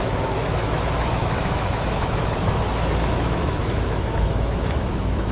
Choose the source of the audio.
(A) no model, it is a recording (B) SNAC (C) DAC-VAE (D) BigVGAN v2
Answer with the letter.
C